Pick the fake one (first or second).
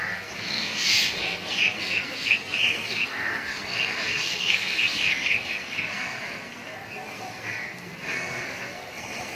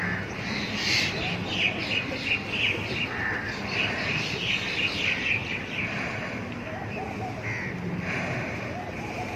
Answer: first